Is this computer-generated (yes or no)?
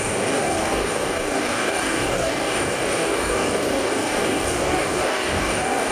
yes